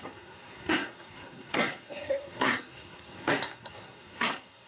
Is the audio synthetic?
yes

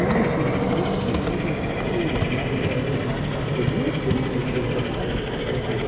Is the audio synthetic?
no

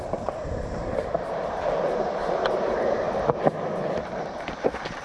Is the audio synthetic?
yes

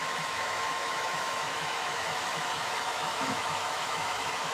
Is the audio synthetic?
yes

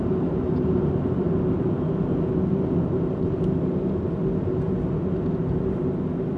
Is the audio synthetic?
no